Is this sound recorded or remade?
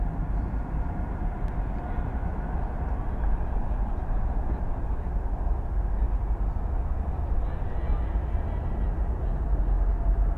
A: recorded